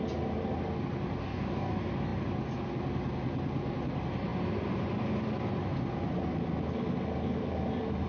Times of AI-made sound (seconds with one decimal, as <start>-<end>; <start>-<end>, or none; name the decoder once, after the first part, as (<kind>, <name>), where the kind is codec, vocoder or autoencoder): 1.2-1.7 (codec, DAC)